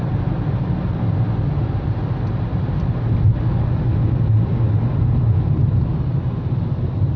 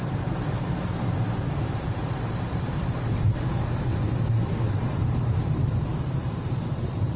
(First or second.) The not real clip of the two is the second